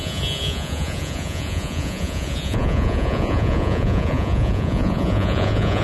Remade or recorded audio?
remade